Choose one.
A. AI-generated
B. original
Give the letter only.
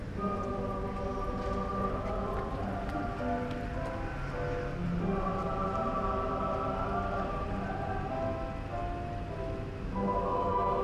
B